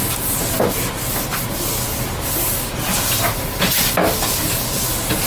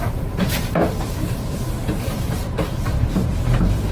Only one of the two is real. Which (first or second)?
first